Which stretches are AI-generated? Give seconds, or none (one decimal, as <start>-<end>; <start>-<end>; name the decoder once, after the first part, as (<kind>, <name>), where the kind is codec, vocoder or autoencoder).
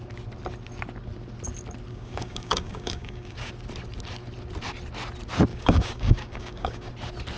1.9-3.5 (codec, DAC); 5.5-6.9